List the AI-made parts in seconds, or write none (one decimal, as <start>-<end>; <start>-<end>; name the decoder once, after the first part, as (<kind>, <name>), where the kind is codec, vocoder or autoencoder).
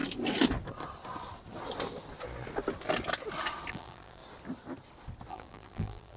3.7-4.2 (vocoder, BigVGAN v2); 5.3-6.2